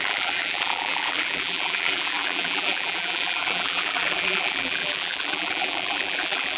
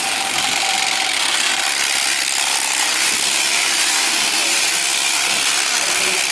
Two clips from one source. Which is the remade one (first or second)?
first